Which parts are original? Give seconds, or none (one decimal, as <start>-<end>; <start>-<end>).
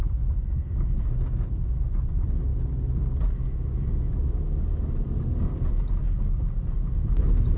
0.0-7.6